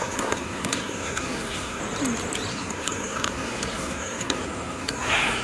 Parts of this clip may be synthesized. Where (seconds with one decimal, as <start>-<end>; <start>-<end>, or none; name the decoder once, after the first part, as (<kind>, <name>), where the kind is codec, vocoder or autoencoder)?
0.0-1.8 (codec, SNAC); 2.5-5.4